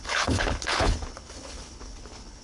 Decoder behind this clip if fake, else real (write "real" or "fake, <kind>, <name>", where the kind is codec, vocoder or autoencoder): fake, codec, HILCodec